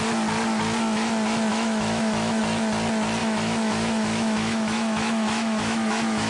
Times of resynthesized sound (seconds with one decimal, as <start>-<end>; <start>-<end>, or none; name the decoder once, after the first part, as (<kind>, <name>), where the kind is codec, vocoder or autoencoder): 1.5-2.4 (autoencoder, DAC-VAE); 3.2-6.3